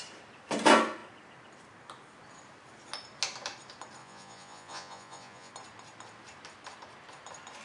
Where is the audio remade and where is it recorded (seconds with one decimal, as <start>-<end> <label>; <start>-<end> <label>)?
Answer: 0.0-4.0 recorded; 4.0-5.5 remade; 5.5-7.6 recorded